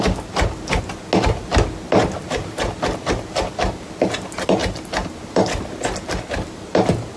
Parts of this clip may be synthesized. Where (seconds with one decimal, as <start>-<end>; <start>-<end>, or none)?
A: none